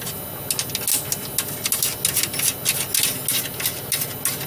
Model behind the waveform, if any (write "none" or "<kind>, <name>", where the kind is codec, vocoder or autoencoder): none